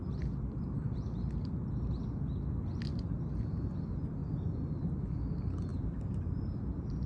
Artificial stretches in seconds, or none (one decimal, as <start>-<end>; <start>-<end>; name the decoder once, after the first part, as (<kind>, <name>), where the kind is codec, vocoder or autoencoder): 2.9-3.7 (vocoder, BigVGAN v2); 5.7-6.4